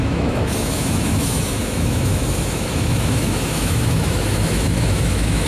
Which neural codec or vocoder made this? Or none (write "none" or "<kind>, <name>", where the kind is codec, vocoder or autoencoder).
autoencoder, DAC-VAE